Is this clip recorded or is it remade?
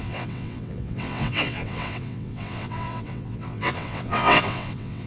remade